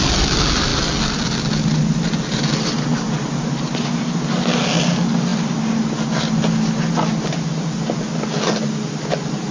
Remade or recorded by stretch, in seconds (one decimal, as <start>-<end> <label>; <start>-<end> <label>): 0.0-9.5 recorded